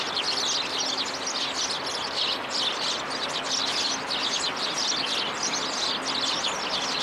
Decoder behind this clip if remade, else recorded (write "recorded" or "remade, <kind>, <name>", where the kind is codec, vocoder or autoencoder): recorded